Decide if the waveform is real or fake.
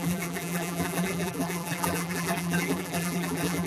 fake